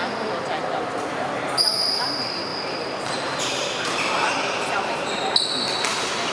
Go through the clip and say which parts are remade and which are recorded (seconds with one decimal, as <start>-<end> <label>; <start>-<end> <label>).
0.0-2.5 recorded; 2.5-5.2 remade; 5.2-6.3 recorded